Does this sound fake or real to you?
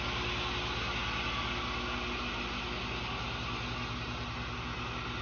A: real